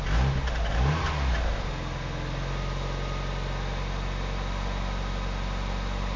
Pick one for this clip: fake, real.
real